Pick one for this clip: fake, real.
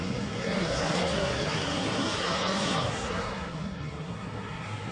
fake